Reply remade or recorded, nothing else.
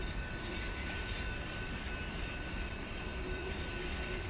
remade